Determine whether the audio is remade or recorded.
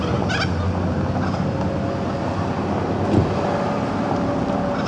recorded